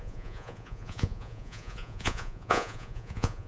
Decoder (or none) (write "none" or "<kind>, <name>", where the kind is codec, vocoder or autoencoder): vocoder, Vocos